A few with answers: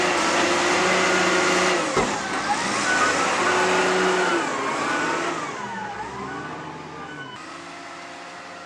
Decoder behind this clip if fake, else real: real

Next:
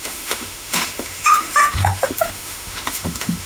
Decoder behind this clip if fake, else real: fake, autoencoder, DAC-VAE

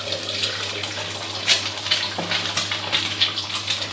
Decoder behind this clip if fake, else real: real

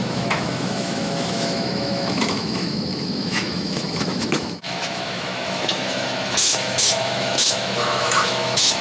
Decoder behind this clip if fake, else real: fake, autoencoder, DAC-VAE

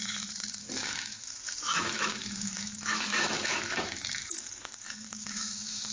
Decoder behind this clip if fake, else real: fake, autoencoder, DAC-VAE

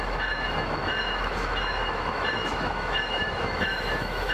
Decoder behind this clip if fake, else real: fake, autoencoder, DAC-VAE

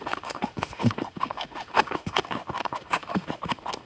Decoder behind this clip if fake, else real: fake, autoencoder, DAC-VAE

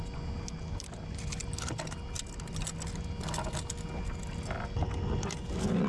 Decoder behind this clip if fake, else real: real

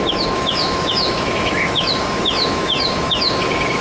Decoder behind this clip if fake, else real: fake, autoencoder, DAC-VAE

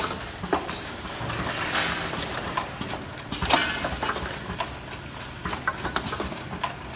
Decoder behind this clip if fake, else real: real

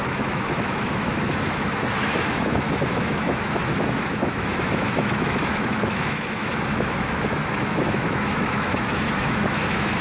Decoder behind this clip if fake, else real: fake, autoencoder, DAC-VAE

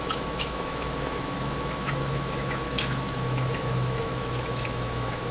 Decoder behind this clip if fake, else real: fake, autoencoder, DAC-VAE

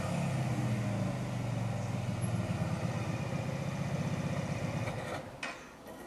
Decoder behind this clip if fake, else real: real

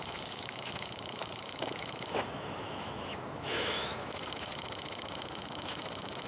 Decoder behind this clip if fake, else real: fake, autoencoder, DAC-VAE